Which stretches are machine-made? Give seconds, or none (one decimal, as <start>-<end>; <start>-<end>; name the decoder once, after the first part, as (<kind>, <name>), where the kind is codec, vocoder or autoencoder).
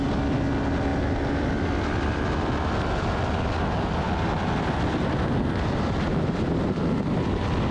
none